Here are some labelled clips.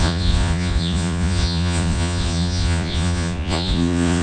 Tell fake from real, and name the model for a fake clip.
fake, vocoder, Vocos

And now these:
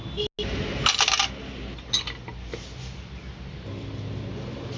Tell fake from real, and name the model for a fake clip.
real